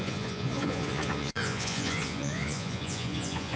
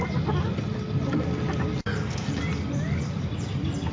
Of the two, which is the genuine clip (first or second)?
second